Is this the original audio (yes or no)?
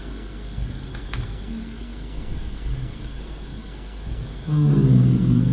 no